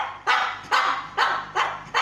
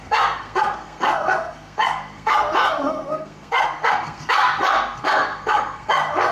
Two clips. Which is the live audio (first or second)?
first